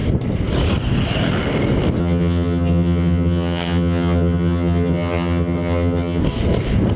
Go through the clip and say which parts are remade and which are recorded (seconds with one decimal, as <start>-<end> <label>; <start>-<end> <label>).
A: 0.0-2.0 recorded; 2.0-6.2 remade; 6.2-7.0 recorded